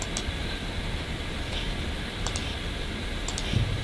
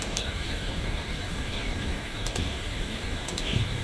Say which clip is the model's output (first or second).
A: second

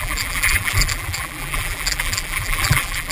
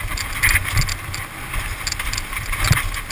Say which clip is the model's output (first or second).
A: first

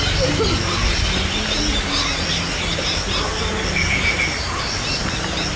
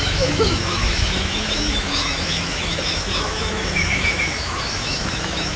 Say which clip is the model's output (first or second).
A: second